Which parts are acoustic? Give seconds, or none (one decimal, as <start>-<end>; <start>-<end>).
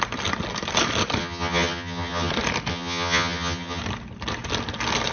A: 0.0-1.2; 2.3-2.7; 3.8-5.1